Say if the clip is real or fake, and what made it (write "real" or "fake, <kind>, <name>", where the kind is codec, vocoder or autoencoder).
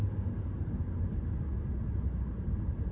real